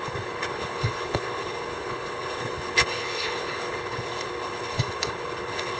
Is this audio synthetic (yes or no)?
yes